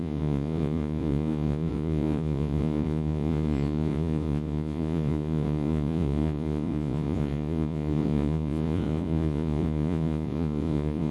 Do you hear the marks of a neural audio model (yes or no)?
yes